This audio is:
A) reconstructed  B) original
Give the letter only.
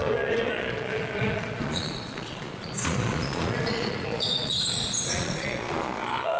A